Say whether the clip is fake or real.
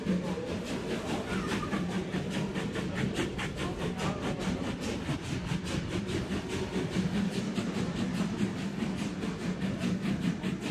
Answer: real